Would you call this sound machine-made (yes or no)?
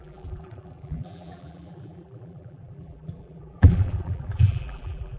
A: yes